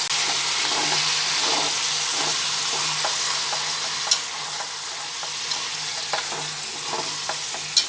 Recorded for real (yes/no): yes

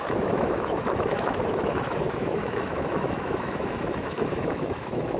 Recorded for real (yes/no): no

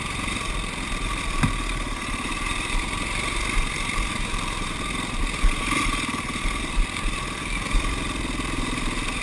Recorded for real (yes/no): no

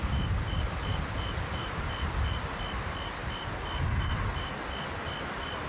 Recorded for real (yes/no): yes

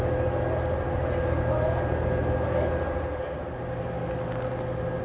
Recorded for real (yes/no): yes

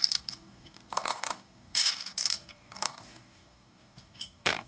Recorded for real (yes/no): no